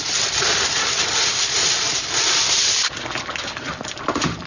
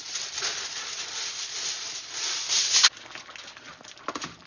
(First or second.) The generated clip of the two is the first